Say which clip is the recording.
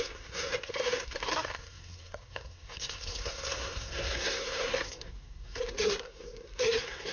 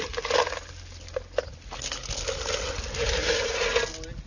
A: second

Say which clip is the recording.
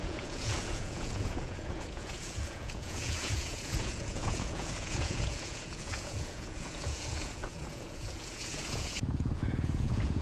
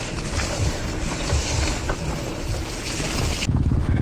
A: second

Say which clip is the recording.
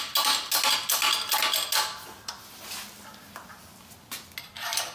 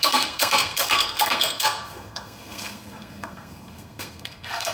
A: first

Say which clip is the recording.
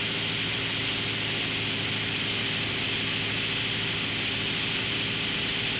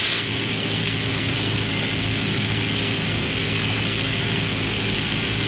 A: first